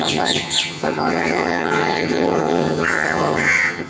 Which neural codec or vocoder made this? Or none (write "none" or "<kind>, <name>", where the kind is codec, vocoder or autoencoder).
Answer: vocoder, HiFi-GAN